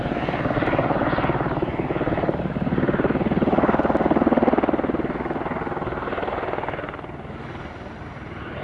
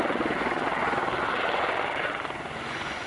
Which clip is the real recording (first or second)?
first